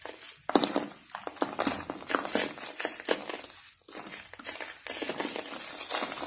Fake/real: real